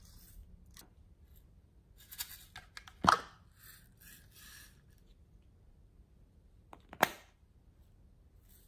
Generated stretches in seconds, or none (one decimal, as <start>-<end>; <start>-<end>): none